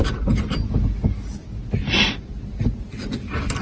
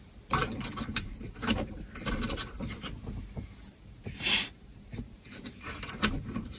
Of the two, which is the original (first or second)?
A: first